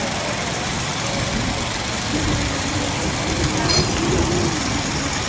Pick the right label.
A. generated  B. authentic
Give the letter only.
B